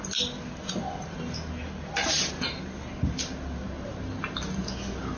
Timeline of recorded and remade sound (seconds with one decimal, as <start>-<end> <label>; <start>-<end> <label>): 0.0-5.2 recorded